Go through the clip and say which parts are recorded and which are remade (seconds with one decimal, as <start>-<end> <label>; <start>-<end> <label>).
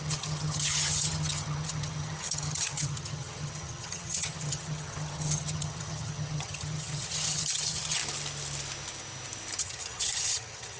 0.0-8.0 remade; 8.0-9.6 recorded; 9.6-10.8 remade